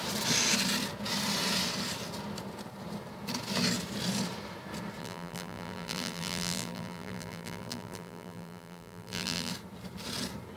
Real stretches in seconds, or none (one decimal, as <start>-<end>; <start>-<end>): 0.0-5.0; 9.5-10.6

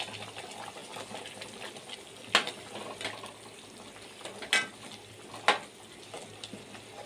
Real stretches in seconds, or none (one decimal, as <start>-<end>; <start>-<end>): 0.0-7.1

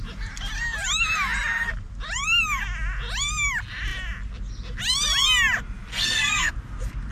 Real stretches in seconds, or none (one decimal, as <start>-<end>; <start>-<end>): 0.0-5.9; 6.5-7.1

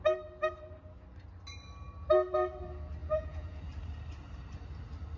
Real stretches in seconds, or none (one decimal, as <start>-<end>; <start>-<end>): 0.0-3.0; 3.6-5.2

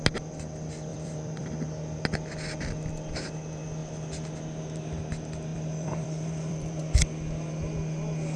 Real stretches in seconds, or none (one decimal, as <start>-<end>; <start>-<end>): 0.0-0.9; 1.5-5.5; 6.8-8.4